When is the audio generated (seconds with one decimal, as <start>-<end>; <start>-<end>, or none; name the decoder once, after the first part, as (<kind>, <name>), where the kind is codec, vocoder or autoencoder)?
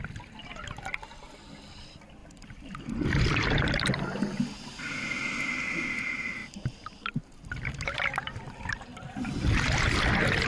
2.2-3.9 (vocoder, BigVGAN v2)